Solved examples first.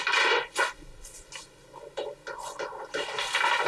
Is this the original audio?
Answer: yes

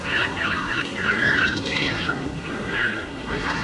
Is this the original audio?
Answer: no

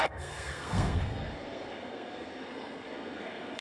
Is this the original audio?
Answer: no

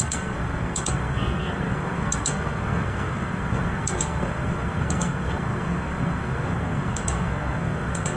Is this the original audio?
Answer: no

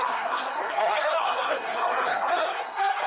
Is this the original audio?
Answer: no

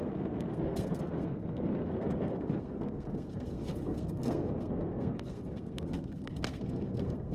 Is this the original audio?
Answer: no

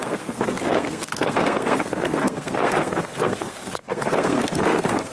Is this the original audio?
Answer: no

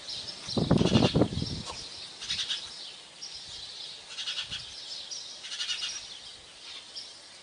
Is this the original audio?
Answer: yes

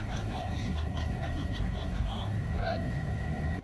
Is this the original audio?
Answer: no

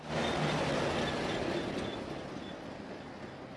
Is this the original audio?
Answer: yes